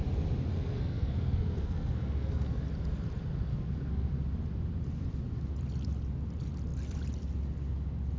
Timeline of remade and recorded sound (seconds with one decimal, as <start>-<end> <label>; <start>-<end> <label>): 0.0-0.5 recorded; 0.5-2.6 remade; 2.6-3.5 recorded; 3.5-4.1 remade; 4.1-8.2 recorded